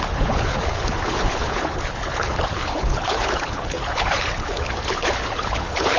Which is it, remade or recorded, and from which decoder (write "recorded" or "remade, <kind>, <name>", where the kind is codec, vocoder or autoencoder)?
remade, codec, HILCodec